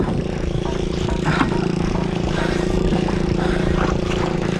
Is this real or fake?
fake